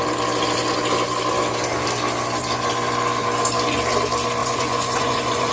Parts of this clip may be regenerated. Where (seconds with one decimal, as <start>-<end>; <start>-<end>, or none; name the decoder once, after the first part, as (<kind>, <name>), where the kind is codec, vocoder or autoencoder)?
4.4-5.5 (vocoder, Vocos)